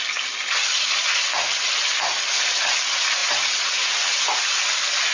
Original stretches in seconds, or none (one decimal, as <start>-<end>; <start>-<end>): 0.0-5.1